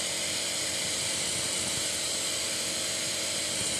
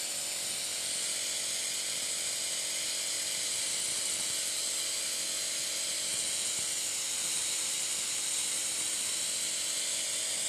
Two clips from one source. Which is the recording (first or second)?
second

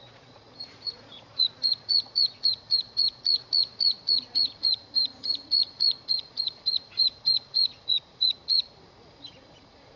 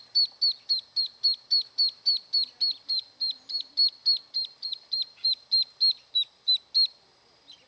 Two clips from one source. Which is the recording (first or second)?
second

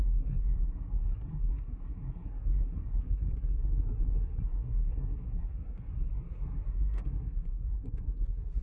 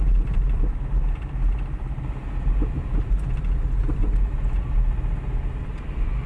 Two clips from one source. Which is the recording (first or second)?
second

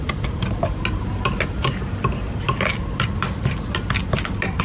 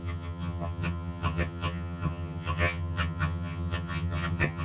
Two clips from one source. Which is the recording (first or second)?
first